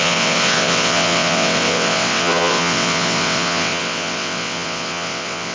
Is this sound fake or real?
fake